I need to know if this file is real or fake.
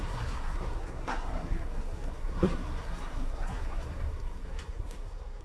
fake